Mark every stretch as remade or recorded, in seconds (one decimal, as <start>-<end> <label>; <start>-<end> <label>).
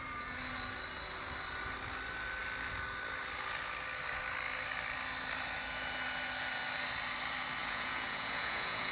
0.0-7.6 recorded; 7.6-8.9 remade